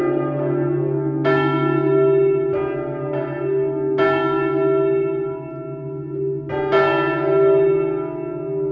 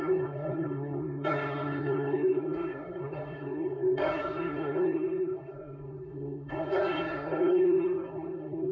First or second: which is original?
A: first